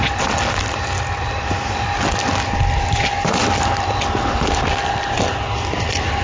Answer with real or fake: real